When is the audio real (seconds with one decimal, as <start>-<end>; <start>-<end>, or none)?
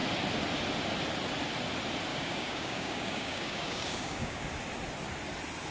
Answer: 0.0-2.1; 4.5-5.7